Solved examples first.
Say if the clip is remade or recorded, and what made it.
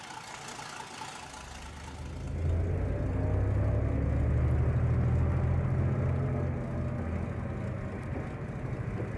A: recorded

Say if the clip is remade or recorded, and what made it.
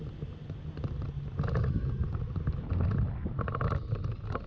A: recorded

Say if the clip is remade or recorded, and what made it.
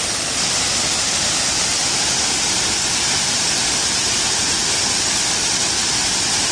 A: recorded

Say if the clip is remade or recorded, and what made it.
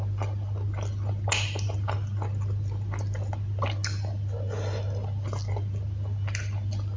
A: recorded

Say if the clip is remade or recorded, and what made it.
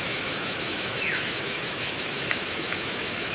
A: remade, autoencoder, DAC-VAE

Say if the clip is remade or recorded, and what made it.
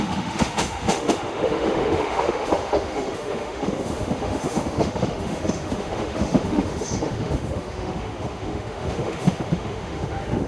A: remade, autoencoder, DAC-VAE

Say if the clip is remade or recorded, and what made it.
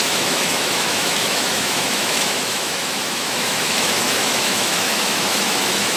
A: remade, autoencoder, DAC-VAE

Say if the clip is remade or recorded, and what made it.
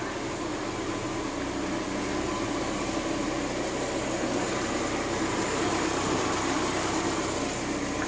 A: recorded